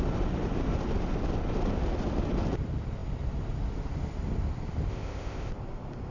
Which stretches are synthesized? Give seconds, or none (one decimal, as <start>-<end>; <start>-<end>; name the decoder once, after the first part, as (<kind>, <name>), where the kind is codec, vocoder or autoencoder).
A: 4.9-5.5 (codec, ZipCodec)